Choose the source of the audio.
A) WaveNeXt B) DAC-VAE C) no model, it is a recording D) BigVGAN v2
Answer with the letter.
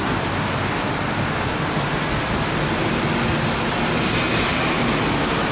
C